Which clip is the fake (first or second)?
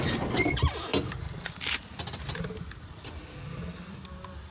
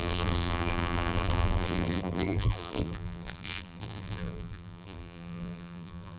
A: second